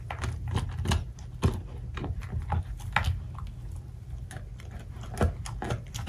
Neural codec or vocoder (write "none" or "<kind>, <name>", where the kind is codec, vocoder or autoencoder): none